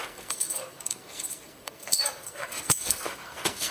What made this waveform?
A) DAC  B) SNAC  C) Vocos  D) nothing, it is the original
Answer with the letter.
B